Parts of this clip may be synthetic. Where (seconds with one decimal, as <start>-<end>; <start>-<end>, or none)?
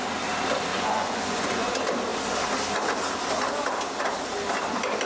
0.7-1.7